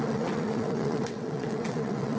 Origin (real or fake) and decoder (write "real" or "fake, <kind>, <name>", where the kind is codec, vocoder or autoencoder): fake, vocoder, WaveNeXt